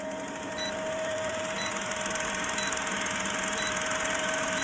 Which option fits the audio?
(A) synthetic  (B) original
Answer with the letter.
A